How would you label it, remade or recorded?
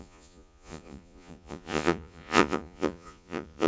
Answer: remade